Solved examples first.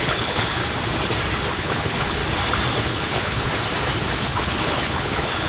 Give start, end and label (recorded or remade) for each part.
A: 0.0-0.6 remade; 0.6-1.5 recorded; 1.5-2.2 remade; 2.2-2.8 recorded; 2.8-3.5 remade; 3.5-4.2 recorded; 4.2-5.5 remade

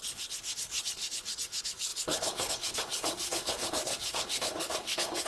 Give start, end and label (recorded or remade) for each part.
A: 0.0-5.3 remade